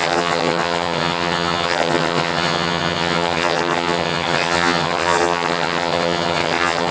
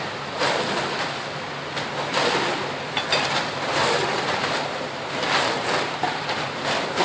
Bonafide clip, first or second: second